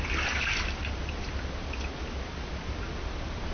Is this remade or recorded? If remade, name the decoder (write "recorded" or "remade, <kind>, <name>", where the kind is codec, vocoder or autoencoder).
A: recorded